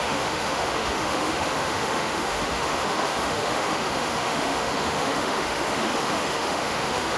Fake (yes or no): yes